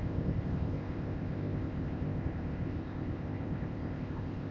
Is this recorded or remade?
remade